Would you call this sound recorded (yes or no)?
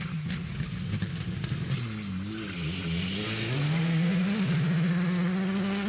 yes